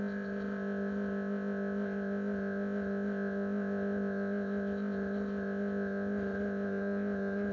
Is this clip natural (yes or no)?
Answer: no